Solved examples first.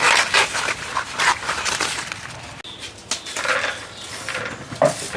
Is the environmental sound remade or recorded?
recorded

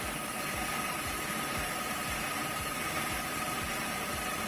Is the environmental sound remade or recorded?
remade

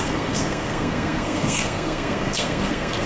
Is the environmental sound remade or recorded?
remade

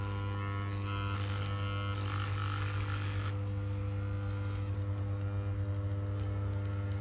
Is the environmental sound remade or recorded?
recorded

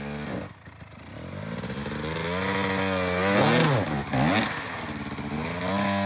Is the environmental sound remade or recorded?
recorded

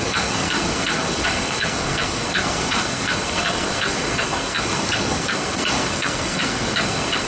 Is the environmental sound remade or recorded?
remade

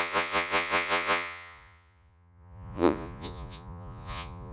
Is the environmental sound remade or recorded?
remade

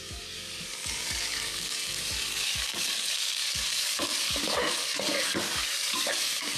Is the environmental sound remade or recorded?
remade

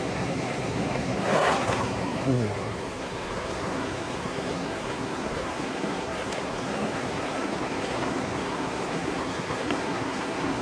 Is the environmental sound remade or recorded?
remade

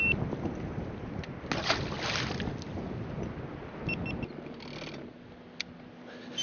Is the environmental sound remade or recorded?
recorded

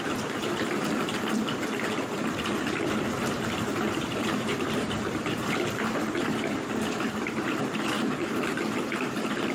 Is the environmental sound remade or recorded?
remade